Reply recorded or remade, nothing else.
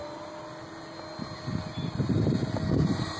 recorded